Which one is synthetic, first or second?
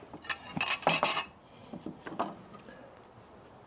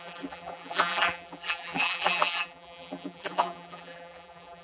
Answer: second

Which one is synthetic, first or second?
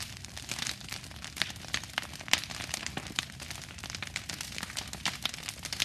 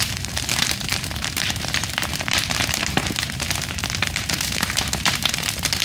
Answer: second